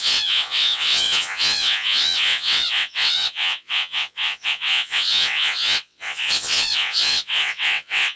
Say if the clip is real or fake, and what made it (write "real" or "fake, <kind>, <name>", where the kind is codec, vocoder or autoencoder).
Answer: fake, vocoder, WaveNeXt